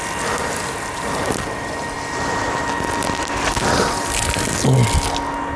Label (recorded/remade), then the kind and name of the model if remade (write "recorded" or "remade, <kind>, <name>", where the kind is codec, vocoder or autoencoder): recorded